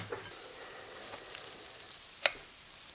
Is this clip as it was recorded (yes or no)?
yes